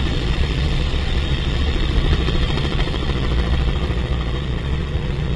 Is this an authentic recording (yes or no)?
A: no